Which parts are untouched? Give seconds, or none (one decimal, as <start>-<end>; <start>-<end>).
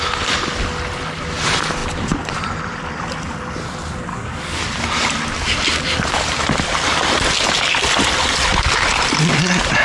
0.0-4.1; 4.6-9.8